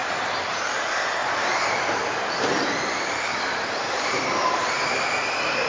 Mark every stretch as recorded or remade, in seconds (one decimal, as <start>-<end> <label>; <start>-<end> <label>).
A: 0.0-0.6 remade; 0.6-1.2 recorded; 1.2-4.6 remade; 4.6-5.7 recorded